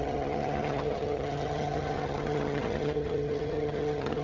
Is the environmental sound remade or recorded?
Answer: remade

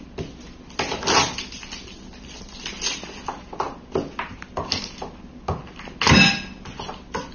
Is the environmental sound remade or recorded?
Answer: recorded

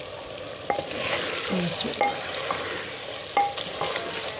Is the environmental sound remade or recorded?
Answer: recorded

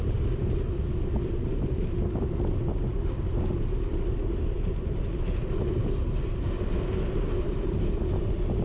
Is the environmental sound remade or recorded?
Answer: recorded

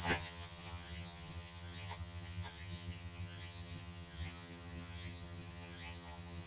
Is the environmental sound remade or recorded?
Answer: remade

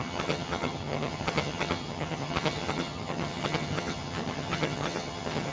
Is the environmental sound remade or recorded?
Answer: remade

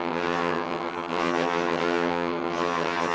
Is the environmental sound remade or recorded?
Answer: remade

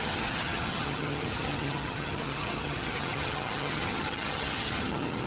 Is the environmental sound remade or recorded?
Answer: remade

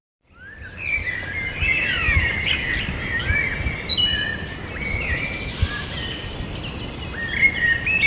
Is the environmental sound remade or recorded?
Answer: recorded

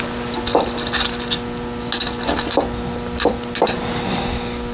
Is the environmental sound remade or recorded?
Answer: recorded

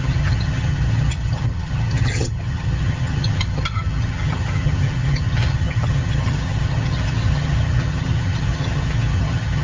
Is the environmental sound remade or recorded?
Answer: remade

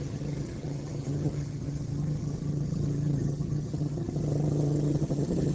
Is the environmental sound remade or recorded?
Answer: remade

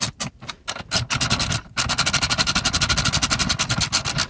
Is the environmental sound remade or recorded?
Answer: recorded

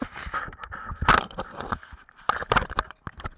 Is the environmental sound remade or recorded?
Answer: recorded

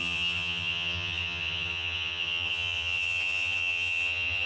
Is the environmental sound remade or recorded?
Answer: remade